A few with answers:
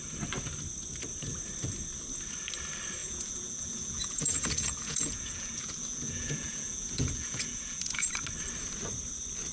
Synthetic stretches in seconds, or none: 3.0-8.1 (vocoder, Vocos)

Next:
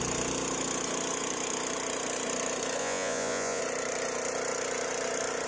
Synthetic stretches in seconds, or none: 2.8-3.6 (vocoder, Vocos)

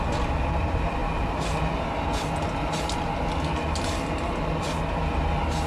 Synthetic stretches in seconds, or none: none

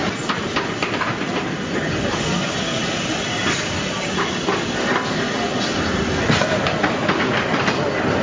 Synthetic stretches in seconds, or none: none